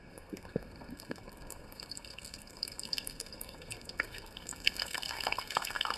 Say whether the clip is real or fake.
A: fake